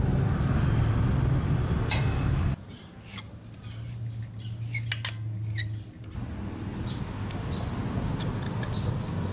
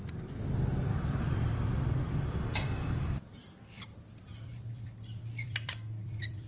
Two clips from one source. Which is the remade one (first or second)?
second